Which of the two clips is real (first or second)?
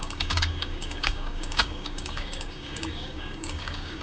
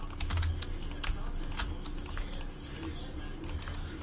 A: second